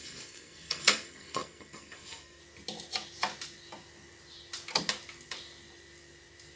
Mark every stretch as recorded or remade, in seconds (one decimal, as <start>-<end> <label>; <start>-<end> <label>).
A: 0.0-2.4 remade; 2.4-6.6 recorded